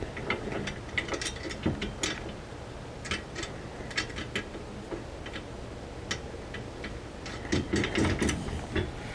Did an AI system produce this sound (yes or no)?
no